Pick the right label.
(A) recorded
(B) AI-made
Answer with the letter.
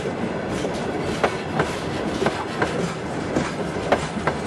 A